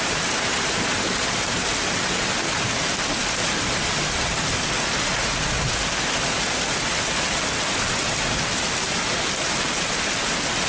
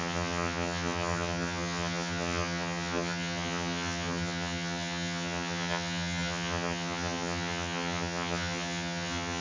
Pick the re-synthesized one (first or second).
second